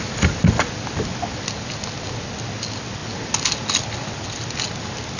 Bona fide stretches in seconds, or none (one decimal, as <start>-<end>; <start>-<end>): 0.0-5.2